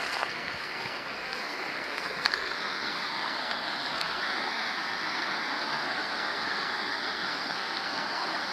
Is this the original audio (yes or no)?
no